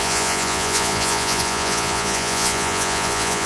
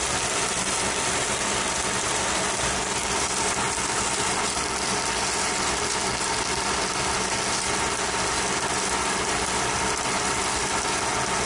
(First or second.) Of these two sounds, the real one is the second